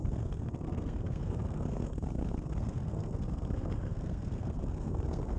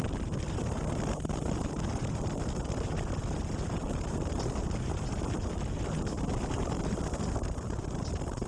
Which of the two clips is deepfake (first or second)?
first